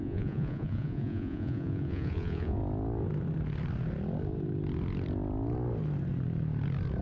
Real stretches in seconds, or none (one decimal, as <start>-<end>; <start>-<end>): 2.6-7.0

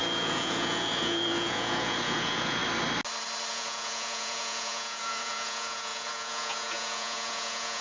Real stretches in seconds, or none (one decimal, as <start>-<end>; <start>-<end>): 2.6-3.5

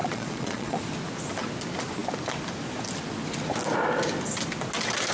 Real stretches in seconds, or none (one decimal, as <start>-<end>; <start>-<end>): 0.8-5.1

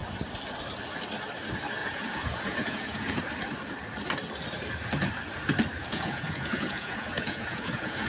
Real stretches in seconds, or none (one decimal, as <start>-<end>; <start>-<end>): 0.0-1.8; 3.2-5.8

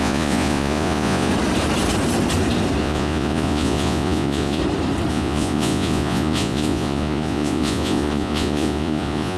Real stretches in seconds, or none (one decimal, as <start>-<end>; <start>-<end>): 1.3-2.8; 4.6-5.1

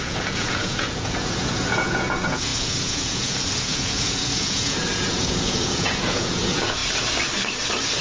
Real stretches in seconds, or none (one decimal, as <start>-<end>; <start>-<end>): 6.8-8.0